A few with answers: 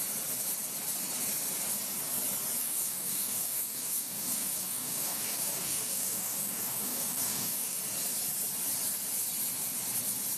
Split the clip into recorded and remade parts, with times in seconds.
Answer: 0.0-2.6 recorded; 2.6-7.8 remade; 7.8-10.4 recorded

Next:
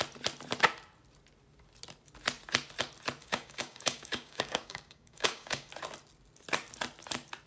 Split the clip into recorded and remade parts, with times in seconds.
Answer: 0.0-3.2 recorded; 3.2-5.7 remade; 5.7-7.5 recorded

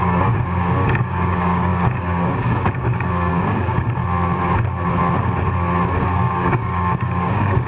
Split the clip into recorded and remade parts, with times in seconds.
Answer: 0.0-4.0 remade; 4.0-6.2 recorded; 6.2-7.7 remade

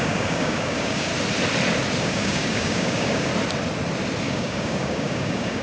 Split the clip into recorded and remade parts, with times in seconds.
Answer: 0.0-1.1 remade; 1.1-2.0 recorded; 2.0-3.3 remade; 3.3-4.2 recorded; 4.2-5.6 remade

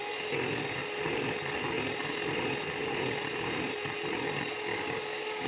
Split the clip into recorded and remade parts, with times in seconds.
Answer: 0.0-4.7 recorded; 4.7-5.5 remade

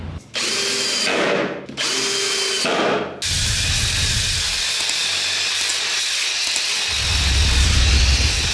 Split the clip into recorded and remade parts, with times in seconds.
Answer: 0.0-8.5 recorded

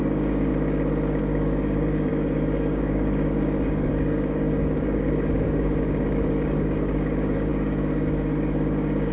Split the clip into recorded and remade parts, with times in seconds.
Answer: 0.0-0.5 remade; 0.5-1.2 recorded; 1.2-9.1 remade

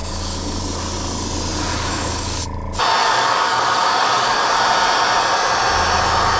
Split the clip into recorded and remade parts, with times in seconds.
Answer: 0.0-0.6 remade; 0.6-1.7 recorded; 1.7-2.4 remade; 2.4-3.0 recorded; 3.0-4.4 remade; 4.4-6.4 recorded